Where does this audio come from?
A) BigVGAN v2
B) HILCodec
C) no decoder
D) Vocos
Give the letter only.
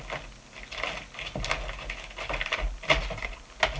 C